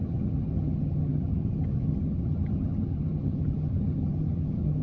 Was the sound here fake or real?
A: fake